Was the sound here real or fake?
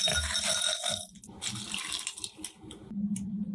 real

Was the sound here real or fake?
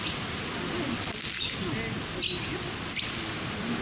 real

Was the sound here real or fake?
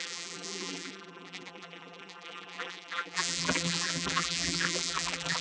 fake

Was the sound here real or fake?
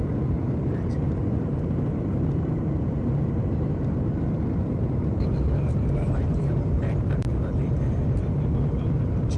fake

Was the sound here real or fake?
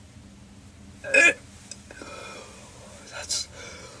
real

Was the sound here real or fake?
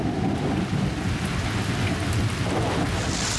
real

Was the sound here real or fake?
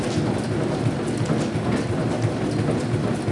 real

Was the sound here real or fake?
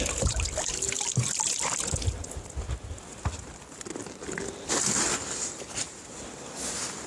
real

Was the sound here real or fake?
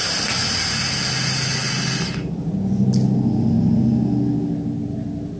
real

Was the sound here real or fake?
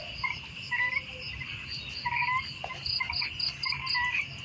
real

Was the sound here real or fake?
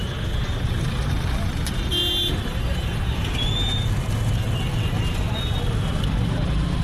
real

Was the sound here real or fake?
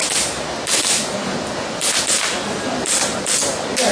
real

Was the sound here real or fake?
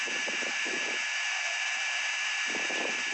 fake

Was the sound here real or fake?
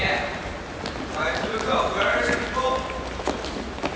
real